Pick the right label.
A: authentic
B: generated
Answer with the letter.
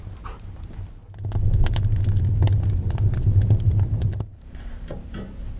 A